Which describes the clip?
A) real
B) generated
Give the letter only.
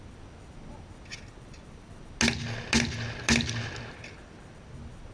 A